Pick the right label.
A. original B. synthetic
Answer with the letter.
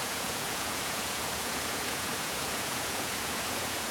B